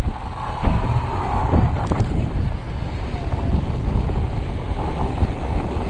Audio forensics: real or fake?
real